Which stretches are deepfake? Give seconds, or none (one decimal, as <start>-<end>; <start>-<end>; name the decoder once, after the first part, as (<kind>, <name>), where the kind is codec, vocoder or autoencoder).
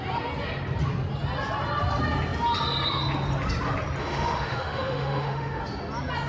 4.0-5.6 (autoencoder, DAC-VAE)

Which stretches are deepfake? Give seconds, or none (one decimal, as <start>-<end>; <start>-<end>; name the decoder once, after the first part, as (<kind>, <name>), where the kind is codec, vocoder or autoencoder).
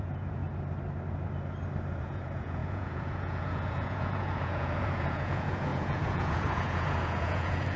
0.0-0.4 (vocoder, Vocos); 2.0-7.8